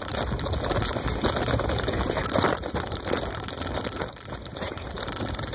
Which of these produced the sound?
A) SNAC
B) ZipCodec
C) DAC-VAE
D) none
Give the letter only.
D